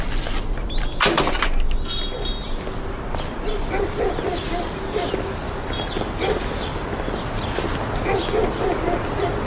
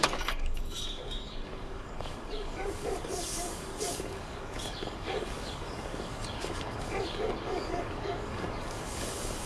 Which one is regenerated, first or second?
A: second